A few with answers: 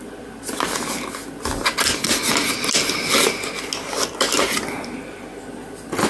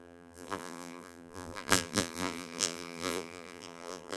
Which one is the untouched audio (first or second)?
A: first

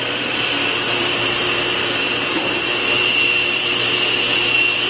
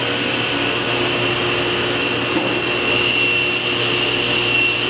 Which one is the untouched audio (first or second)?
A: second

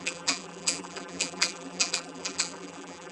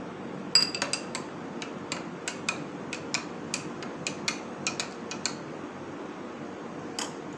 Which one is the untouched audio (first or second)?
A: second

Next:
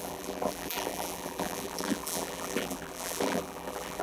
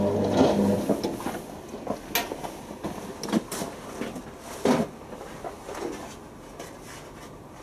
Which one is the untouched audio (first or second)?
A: second